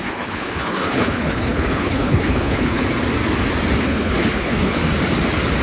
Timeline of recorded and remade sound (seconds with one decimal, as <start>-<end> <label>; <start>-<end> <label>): 0.0-2.8 remade; 2.8-3.8 recorded; 3.8-4.8 remade; 4.8-5.6 recorded